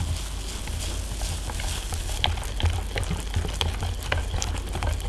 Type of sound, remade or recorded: recorded